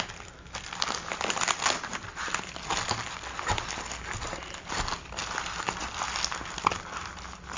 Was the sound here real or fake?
real